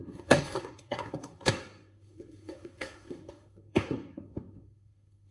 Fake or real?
fake